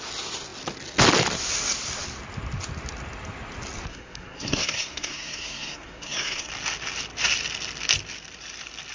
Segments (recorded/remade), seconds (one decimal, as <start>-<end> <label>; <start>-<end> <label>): 0.0-3.9 recorded; 3.9-6.5 remade; 6.5-8.9 recorded